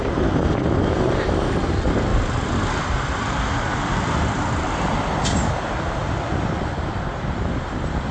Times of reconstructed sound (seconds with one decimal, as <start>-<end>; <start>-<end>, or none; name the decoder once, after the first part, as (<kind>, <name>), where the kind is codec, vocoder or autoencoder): none